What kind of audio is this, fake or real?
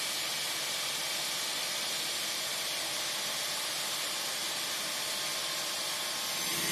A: fake